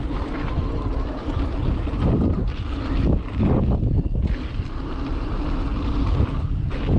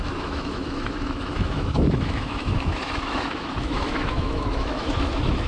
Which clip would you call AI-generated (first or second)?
second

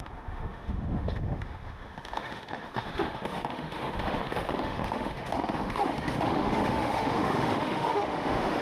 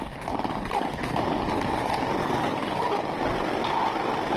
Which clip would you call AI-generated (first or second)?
first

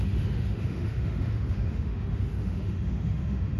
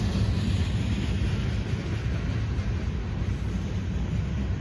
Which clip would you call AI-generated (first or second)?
first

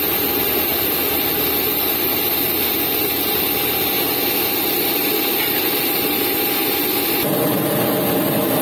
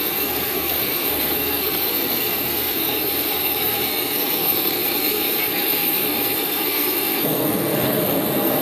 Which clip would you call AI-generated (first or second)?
second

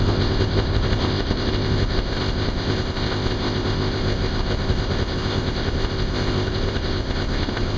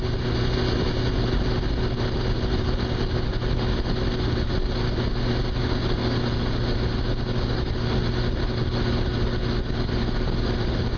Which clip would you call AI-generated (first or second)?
first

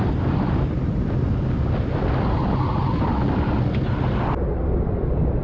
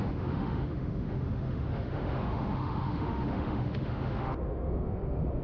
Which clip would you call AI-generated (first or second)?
second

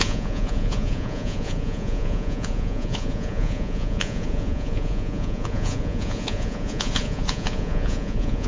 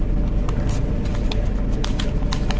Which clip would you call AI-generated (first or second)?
first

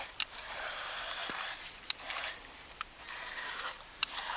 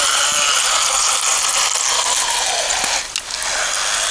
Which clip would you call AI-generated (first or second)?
first